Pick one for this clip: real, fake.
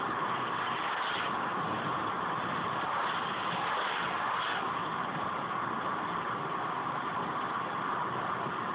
real